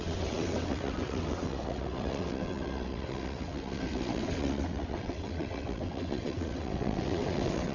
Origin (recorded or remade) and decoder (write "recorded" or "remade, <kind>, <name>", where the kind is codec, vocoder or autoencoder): remade, vocoder, WaveNeXt